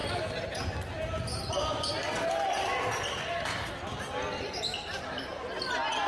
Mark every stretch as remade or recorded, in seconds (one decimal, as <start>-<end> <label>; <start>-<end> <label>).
0.0-4.7 recorded; 4.7-5.4 remade; 5.4-6.1 recorded